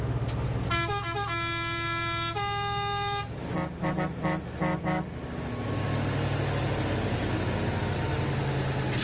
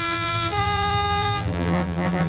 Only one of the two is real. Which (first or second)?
first